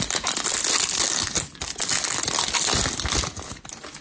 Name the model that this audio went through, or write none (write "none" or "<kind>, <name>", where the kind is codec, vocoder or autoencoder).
none